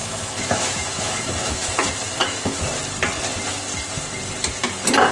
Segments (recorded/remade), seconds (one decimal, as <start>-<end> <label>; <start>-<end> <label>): 0.0-1.8 remade; 1.8-2.2 recorded; 2.2-2.7 remade; 2.7-5.1 recorded